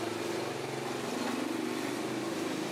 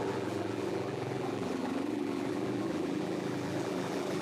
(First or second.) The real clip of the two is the first